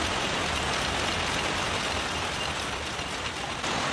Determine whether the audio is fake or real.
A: real